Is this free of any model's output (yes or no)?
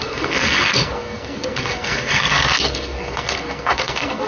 no